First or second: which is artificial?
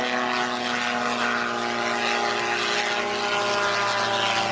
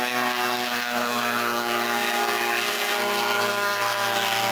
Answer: second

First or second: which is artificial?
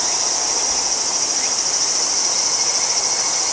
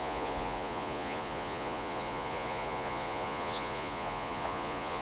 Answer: second